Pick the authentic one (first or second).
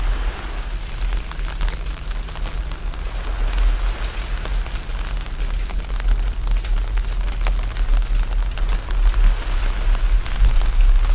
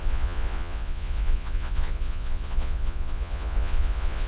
first